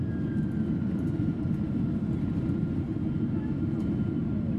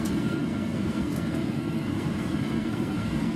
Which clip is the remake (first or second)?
second